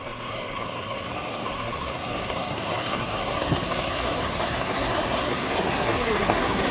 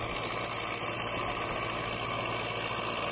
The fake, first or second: first